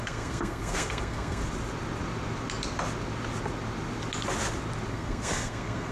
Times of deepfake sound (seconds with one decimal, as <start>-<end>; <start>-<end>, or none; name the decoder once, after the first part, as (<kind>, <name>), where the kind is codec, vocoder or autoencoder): 0.0-1.4 (codec, SNAC); 4.9-5.9

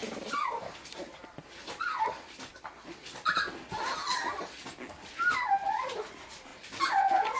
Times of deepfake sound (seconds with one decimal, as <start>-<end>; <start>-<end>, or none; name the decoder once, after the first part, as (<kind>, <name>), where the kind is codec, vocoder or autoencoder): none

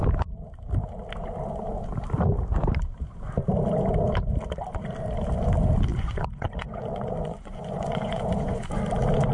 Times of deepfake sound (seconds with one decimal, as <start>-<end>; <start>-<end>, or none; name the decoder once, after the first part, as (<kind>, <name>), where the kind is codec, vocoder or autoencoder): 5.9-8.8 (vocoder, Vocos)

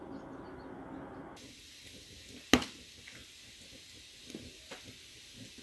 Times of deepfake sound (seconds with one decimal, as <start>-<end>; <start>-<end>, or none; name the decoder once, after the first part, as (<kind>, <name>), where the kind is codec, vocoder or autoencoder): none

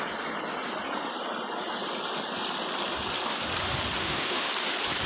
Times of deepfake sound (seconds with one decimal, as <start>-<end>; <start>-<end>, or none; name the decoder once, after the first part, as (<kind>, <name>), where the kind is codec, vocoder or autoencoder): 4.0-4.5 (autoencoder, DAC-VAE)

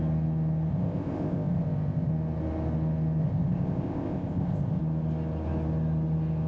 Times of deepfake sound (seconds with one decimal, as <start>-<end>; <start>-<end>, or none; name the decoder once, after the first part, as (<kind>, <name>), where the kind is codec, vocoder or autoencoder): 0.7-2.1 (codec, ZipCodec); 3.2-4.8